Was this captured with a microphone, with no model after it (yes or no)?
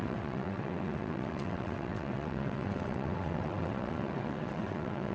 no